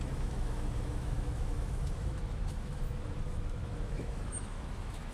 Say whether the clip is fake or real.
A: fake